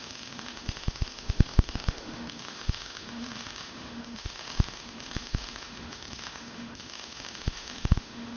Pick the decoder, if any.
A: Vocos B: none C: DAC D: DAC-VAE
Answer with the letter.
D